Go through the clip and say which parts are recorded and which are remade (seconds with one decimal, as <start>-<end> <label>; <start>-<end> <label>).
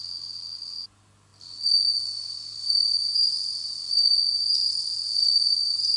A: 0.0-6.0 recorded